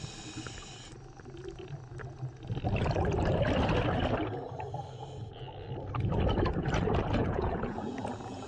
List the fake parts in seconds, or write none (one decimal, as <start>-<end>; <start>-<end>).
7.2-8.5